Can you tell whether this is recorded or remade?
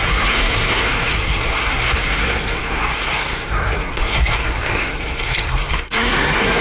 remade